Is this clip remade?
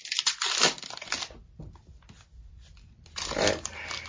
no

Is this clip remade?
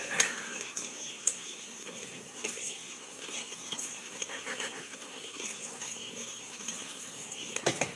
yes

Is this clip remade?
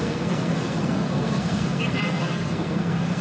yes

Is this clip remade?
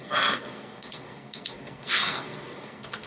yes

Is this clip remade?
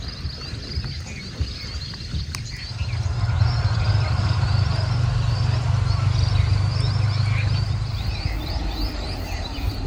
no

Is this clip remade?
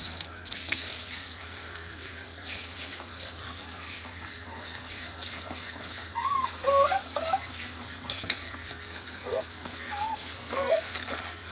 yes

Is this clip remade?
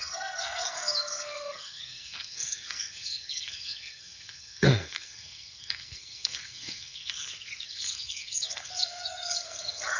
yes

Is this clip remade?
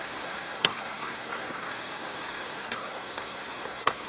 yes